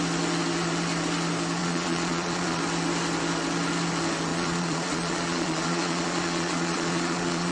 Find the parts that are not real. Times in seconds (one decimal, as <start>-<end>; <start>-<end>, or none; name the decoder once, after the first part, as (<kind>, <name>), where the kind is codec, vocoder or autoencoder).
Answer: 1.6-2.6 (vocoder, Vocos); 4.3-7.5